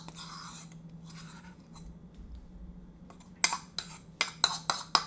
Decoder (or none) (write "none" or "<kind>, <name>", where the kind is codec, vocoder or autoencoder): none